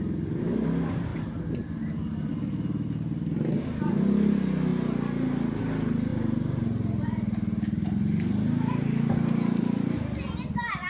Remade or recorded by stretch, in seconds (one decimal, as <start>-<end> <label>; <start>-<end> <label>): 0.0-10.9 recorded